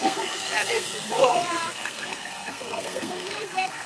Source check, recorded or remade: remade